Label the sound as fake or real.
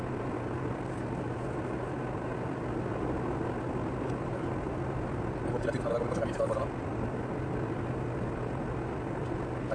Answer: real